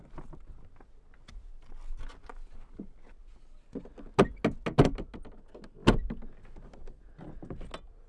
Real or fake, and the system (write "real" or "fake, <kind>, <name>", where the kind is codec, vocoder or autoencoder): real